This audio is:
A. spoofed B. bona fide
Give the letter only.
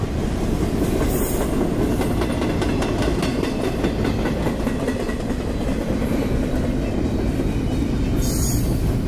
B